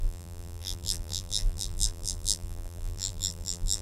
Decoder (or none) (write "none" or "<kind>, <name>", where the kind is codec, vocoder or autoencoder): vocoder, BigVGAN v2